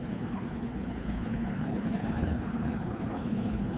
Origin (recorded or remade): remade